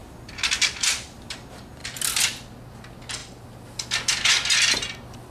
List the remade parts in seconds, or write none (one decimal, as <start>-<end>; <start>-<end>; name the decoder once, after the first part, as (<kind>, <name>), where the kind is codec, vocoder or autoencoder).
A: none